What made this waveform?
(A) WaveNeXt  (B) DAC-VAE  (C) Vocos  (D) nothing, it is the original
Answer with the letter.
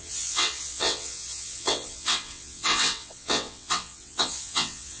A